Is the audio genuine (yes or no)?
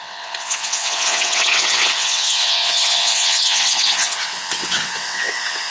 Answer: no